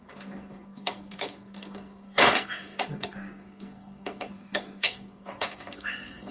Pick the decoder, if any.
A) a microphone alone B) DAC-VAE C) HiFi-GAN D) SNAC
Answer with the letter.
D